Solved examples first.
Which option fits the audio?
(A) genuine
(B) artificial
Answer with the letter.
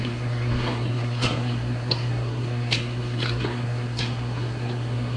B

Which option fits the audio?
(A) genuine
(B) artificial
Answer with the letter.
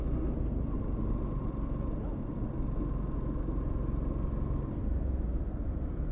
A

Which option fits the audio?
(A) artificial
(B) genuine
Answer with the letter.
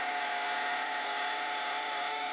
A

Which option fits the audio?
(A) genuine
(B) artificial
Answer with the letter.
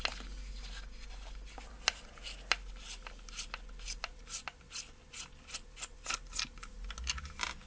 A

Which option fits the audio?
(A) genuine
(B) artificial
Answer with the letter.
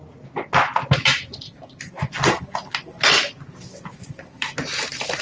A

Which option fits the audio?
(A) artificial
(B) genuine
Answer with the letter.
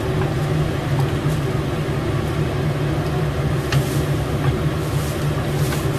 B